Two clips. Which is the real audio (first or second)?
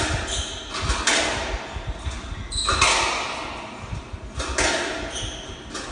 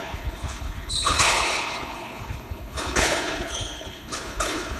first